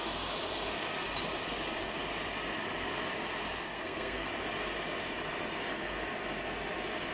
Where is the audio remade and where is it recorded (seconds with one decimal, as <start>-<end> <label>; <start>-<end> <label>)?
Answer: 0.0-3.7 recorded; 3.7-4.3 remade; 4.3-7.1 recorded